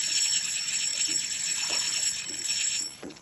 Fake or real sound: fake